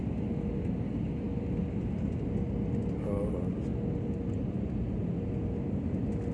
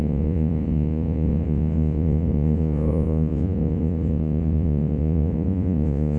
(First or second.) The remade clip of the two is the second